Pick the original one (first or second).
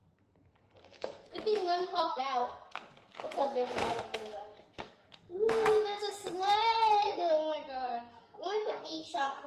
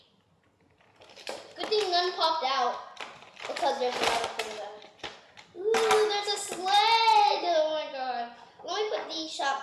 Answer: second